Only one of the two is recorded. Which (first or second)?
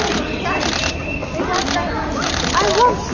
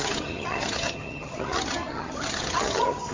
first